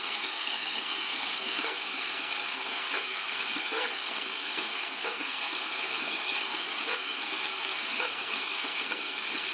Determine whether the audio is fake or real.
fake